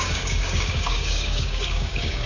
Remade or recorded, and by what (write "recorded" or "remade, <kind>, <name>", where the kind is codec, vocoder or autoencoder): remade, codec, DAC